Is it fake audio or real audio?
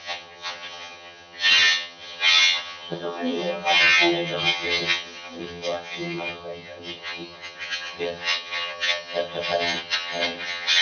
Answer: fake